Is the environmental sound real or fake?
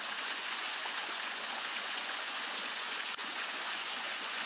fake